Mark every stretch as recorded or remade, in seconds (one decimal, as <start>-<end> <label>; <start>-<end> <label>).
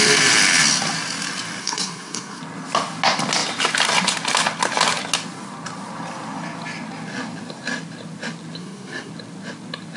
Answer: 0.0-1.6 recorded; 1.6-2.4 remade; 2.4-8.6 recorded; 8.6-9.1 remade; 9.1-10.0 recorded